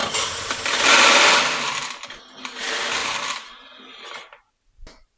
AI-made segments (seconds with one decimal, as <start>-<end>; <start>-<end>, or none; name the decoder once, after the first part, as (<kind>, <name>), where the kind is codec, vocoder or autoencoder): 3.0-4.6 (vocoder, BigVGAN v2)